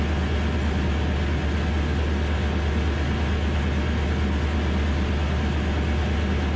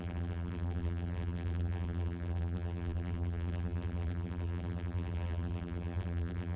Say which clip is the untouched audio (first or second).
first